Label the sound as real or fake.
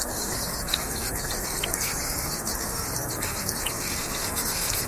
fake